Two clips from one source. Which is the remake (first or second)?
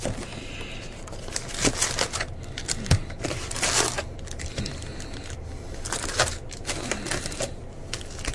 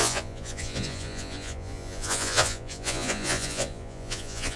second